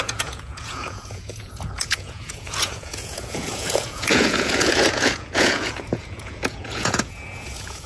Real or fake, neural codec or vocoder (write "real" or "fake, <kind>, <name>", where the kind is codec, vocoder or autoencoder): fake, vocoder, Vocos